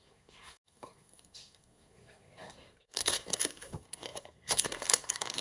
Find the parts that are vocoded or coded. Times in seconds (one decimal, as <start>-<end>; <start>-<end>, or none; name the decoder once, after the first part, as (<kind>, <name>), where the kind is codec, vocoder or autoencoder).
0.0-5.4 (codec, SNAC)